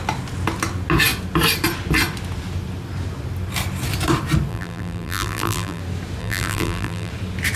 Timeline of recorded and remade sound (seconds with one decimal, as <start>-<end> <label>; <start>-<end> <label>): 0.0-4.5 recorded; 4.5-5.8 remade; 5.8-6.2 recorded; 6.2-7.1 remade; 7.1-7.6 recorded